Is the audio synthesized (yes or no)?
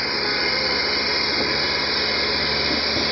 no